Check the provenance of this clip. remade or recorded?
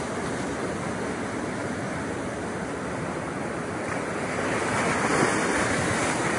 recorded